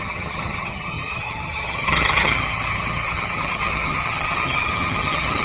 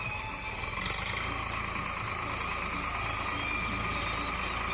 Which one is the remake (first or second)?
first